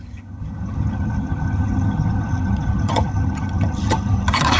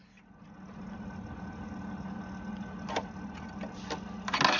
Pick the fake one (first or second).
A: first